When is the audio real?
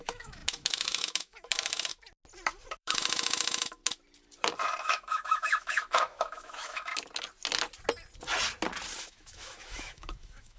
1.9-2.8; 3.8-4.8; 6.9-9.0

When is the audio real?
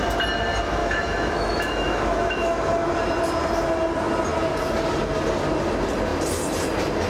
0.0-0.8; 2.9-7.1